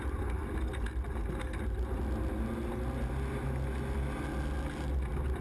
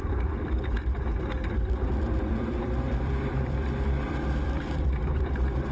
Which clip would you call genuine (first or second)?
first